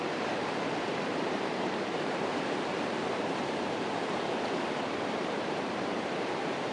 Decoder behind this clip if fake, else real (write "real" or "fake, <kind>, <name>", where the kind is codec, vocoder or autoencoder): fake, vocoder, BigVGAN v2